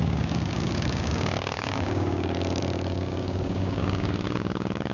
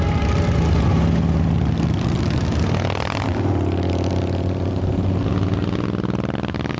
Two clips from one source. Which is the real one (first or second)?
second